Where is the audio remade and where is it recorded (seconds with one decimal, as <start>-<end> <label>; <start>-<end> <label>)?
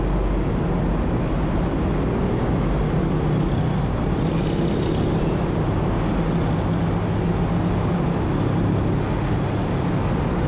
0.0-10.5 recorded